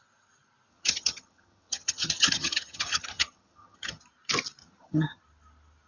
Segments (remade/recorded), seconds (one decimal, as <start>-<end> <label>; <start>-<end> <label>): 0.0-0.7 recorded; 0.7-4.0 remade; 4.0-4.6 recorded; 4.6-5.2 remade; 5.2-5.9 recorded